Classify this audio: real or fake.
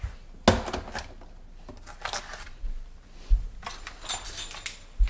real